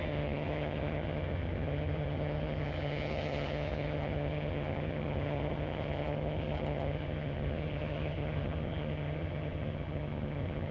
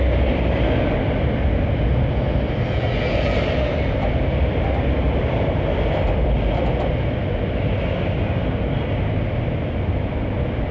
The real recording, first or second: second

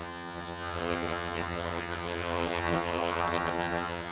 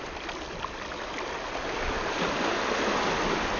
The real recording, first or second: second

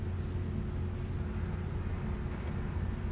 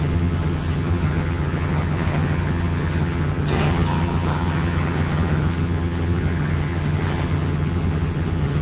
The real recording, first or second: first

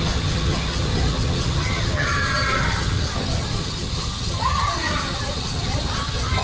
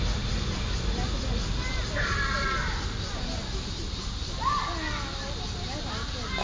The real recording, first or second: second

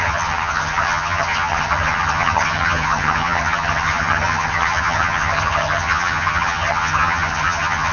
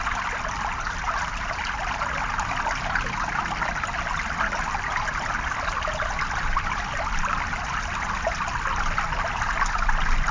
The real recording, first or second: second